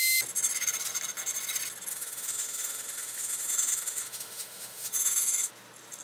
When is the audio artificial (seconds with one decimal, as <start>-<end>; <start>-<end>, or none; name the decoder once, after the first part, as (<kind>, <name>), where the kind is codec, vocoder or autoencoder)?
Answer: 1.9-5.5 (autoencoder, DAC-VAE)